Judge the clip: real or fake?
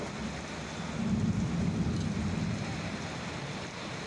real